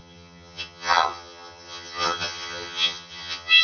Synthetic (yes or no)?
yes